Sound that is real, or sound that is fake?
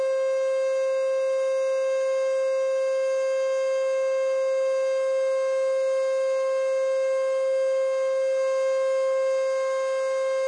real